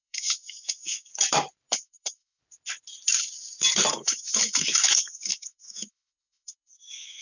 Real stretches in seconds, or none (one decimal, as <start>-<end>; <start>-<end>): 1.1-1.7; 2.4-3.9